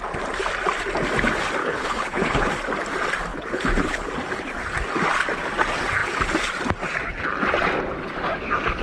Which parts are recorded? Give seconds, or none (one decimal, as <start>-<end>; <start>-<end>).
0.0-1.6; 2.5-3.3; 4.1-8.8